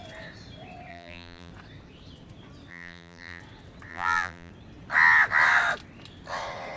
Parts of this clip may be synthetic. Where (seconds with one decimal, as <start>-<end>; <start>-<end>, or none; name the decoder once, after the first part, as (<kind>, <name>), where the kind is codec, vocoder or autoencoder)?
0.9-1.5 (vocoder, BigVGAN v2); 2.7-3.4; 3.9-4.5